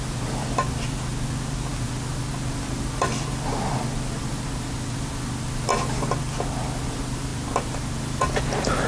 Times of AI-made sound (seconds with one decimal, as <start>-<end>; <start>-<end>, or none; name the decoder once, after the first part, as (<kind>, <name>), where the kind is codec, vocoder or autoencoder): 7.3-8.4 (vocoder, BigVGAN v2)